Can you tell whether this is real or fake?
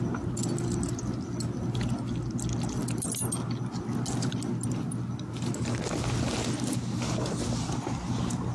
real